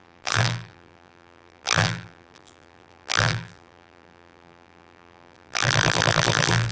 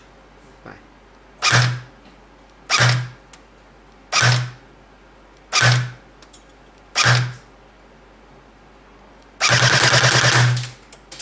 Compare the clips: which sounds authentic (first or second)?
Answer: second